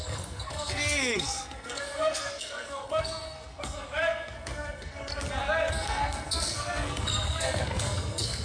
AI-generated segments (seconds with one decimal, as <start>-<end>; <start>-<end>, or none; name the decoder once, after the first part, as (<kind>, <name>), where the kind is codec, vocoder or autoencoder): 0.0-5.1 (codec, SNAC); 5.7-8.4